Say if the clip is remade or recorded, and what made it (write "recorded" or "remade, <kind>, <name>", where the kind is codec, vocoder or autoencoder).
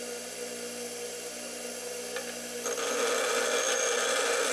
recorded